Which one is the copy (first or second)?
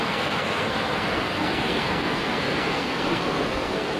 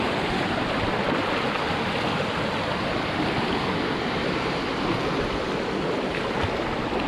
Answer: first